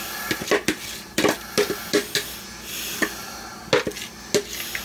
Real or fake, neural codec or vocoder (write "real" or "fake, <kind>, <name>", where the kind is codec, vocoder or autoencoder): real